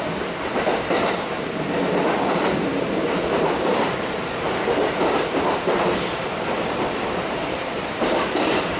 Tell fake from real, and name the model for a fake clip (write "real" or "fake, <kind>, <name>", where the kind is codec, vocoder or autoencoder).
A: fake, vocoder, BigVGAN v2